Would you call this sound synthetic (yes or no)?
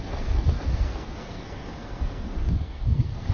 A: yes